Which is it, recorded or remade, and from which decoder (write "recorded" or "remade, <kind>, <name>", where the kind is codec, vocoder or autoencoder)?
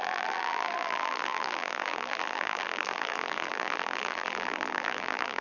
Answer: remade, vocoder, BigVGAN v2